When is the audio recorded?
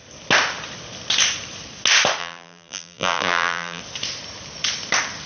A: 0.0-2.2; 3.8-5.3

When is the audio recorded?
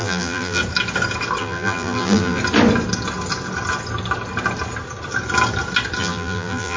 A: 0.6-1.4; 2.4-6.0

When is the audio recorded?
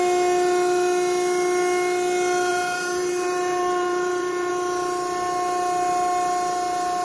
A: 0.0-2.5; 4.5-7.0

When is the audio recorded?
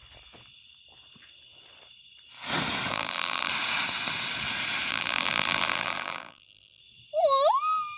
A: 0.0-2.9; 3.5-4.9; 6.8-8.0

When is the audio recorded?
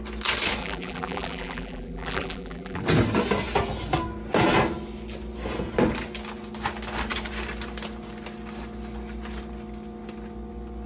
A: 0.0-0.6; 2.8-10.9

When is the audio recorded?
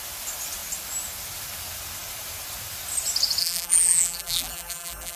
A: 0.0-3.4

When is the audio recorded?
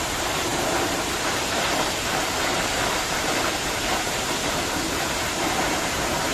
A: none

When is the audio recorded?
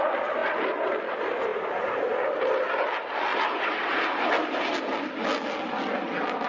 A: 0.0-0.4; 1.0-6.5